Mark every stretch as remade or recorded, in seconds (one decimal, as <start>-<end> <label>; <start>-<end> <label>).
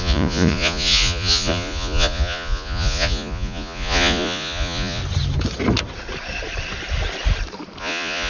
0.0-5.0 remade; 5.0-7.8 recorded; 7.8-8.3 remade